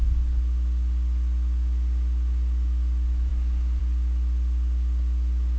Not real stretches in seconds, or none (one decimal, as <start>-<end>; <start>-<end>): none